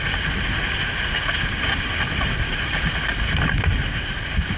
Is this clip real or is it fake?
real